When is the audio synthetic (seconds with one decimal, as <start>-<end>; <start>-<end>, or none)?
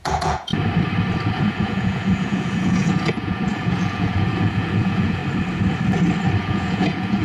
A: 0.0-0.5; 1.3-5.2; 6.4-7.2